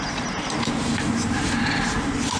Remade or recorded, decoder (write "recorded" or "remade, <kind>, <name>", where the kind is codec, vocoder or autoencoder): remade, vocoder, BigVGAN v2